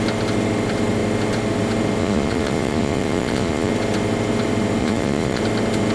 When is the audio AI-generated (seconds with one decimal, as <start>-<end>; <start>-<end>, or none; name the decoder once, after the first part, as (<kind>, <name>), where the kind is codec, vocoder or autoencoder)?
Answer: 2.0-3.7 (vocoder, Vocos); 4.8-5.4